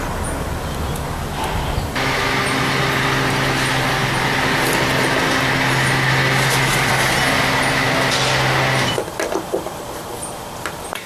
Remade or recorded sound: recorded